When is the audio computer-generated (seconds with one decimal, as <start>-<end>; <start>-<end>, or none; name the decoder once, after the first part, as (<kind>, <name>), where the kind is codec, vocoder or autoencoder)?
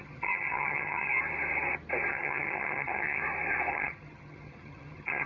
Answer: 0.0-1.1 (vocoder, HiFi-GAN); 2.1-3.2; 3.7-5.3